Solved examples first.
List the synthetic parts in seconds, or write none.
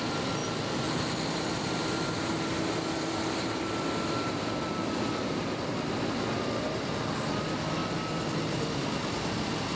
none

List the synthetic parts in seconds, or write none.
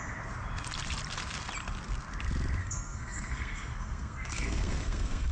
2.6-5.3 (codec, SNAC)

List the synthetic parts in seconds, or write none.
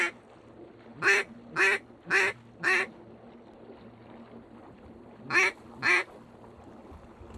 none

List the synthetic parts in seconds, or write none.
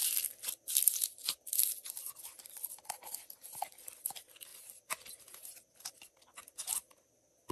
none